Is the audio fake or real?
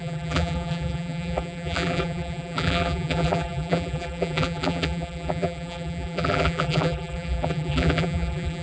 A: fake